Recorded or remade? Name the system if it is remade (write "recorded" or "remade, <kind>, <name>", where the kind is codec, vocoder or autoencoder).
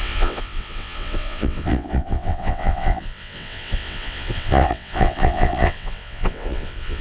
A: remade, vocoder, WaveNeXt